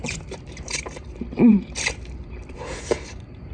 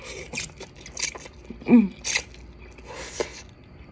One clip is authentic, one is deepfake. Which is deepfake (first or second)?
first